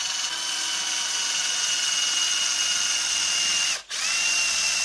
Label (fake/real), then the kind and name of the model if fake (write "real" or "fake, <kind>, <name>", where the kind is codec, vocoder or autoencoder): real